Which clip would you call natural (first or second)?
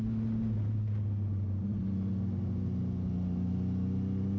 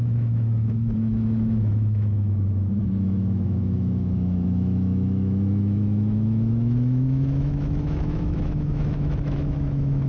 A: first